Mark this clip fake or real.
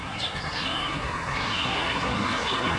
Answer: fake